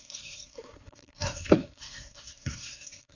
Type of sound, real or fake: fake